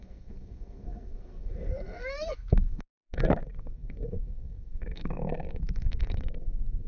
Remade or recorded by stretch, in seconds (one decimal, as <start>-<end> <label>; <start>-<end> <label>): 0.0-6.9 remade